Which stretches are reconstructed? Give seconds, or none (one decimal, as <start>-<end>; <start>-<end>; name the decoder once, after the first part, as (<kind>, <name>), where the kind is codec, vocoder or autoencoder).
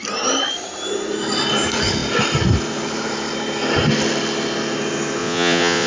5.2-5.9 (vocoder, Vocos)